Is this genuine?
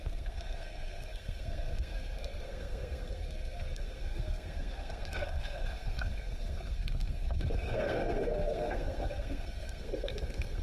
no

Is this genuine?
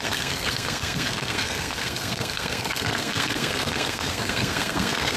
no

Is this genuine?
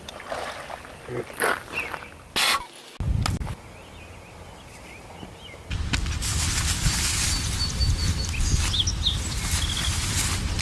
yes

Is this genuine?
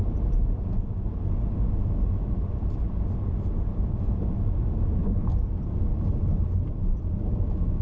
yes